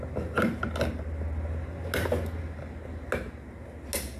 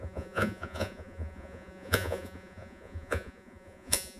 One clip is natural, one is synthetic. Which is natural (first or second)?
first